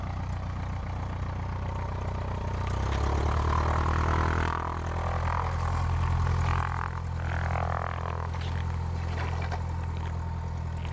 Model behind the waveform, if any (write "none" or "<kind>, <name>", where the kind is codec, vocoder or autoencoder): none